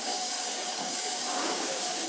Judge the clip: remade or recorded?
remade